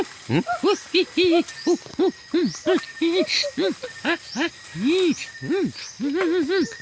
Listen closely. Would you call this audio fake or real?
real